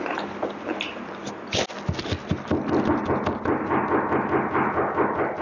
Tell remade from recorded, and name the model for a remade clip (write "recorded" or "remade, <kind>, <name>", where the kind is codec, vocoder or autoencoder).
recorded